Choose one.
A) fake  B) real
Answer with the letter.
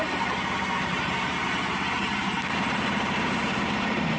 A